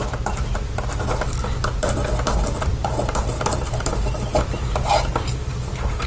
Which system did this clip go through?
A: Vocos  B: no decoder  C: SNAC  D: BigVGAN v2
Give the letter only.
B